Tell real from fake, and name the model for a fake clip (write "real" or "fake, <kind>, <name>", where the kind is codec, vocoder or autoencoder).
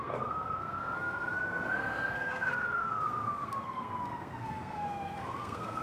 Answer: fake, codec, SNAC